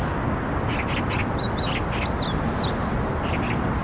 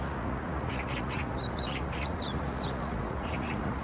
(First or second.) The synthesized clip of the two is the second